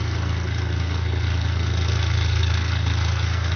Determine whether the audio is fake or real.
fake